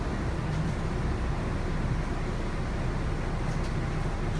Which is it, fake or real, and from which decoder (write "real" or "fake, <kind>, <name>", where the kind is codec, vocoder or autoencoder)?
real